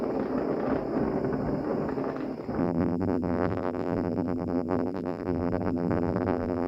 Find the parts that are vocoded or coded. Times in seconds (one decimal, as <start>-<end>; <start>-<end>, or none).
2.6-6.7